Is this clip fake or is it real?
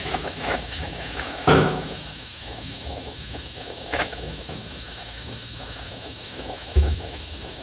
fake